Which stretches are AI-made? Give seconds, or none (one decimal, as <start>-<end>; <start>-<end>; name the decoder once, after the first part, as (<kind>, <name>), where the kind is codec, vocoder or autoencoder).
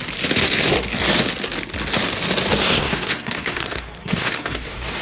2.6-5.0 (codec, SNAC)